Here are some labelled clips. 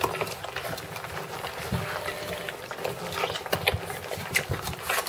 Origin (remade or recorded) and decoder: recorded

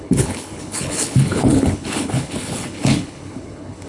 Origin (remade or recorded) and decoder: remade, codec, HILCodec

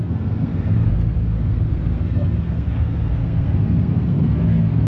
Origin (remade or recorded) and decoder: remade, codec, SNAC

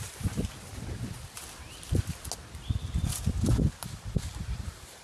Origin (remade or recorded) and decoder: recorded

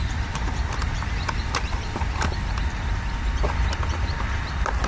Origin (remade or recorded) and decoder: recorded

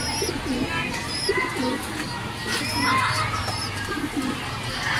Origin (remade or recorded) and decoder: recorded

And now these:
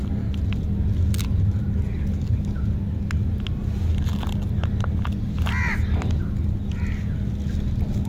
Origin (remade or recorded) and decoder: recorded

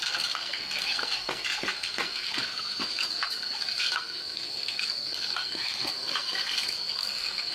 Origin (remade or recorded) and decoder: remade, codec, SNAC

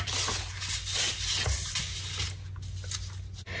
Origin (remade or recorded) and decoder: recorded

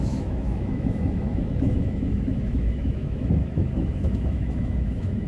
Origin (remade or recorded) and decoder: remade, autoencoder, DAC-VAE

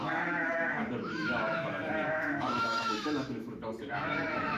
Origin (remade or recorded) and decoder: remade, autoencoder, DAC-VAE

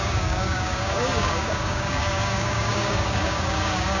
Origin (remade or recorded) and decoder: remade, codec, DAC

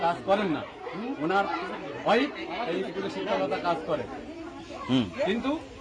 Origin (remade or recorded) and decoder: recorded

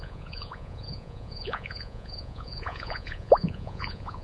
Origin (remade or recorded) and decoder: remade, vocoder, Vocos